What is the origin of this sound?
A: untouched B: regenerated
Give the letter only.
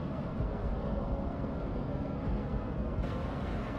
B